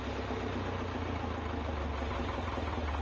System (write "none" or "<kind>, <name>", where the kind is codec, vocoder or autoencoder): none